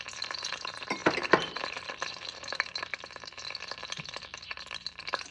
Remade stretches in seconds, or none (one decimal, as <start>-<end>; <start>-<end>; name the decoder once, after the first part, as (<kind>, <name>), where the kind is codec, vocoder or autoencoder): 0.0-5.3 (vocoder, BigVGAN v2)